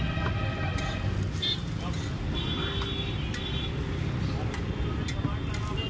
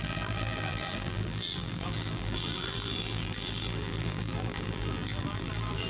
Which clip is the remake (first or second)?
second